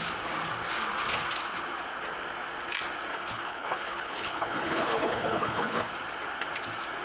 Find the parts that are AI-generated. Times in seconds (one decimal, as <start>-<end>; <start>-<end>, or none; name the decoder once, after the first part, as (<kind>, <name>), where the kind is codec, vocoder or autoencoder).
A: 3.1-5.9 (codec, HILCodec)